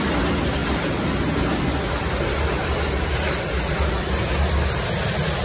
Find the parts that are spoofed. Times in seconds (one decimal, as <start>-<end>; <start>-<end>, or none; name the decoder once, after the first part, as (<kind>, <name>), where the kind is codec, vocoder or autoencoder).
none

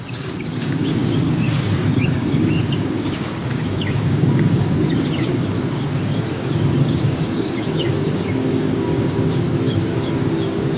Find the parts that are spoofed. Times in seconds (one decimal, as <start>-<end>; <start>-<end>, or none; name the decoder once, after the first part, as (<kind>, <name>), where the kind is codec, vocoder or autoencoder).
0.0-10.8 (codec, DAC)

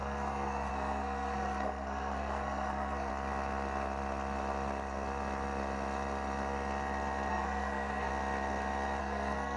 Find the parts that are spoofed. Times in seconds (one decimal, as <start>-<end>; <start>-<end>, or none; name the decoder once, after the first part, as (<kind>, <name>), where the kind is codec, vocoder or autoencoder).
0.0-3.1 (codec, SNAC); 7.3-8.1; 9.0-9.6

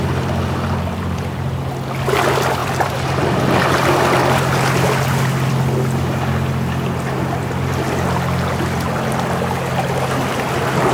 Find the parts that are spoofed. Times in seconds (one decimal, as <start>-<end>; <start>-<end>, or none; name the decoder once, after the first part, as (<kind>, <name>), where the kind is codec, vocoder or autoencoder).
none

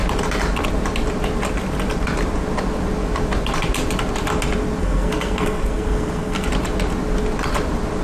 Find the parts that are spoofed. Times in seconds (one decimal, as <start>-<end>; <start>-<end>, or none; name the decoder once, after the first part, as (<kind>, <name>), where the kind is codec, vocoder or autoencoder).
4.8-6.5 (codec, SNAC)

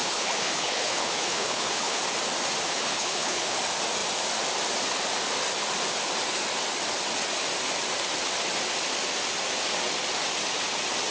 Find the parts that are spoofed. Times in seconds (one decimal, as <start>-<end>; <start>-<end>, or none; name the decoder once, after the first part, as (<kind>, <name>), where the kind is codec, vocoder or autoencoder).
0.0-2.0 (codec, HILCodec); 2.7-3.6